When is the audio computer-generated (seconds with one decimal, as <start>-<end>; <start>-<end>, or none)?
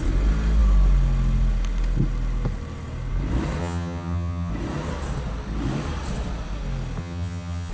3.6-4.5; 7.0-7.7